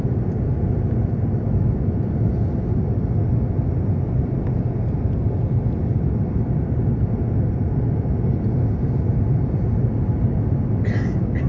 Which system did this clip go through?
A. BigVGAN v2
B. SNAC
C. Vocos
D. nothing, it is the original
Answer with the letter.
D